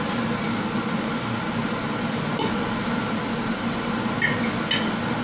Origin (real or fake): real